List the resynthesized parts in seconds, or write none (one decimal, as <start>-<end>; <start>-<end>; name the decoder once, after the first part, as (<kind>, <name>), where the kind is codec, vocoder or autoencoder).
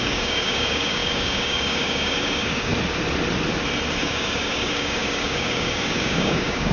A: 0.0-2.7 (codec, DAC); 4.0-6.7